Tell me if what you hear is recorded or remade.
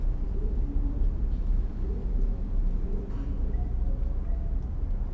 recorded